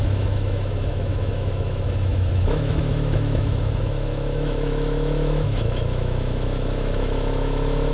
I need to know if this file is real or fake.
fake